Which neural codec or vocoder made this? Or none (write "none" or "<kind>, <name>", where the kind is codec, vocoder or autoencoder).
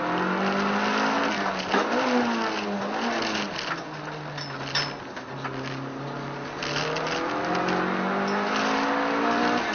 none